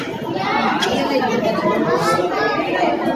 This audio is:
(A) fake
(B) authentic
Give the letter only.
B